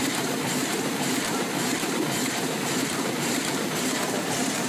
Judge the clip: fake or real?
fake